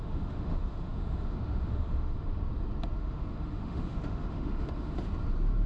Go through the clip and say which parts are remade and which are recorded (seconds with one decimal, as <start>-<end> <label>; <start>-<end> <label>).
0.0-2.5 remade; 2.5-3.0 recorded; 3.0-5.1 remade; 5.1-5.7 recorded